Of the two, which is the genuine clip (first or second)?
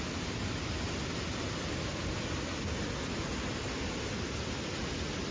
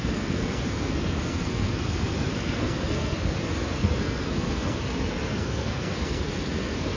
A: first